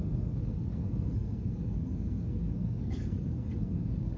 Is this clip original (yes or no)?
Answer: no